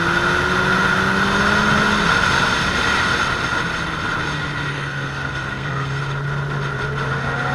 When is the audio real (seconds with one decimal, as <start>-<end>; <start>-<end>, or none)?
0.0-4.7; 6.0-7.5